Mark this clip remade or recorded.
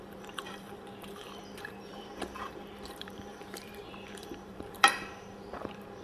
remade